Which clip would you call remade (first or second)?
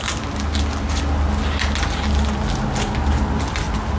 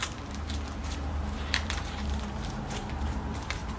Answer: second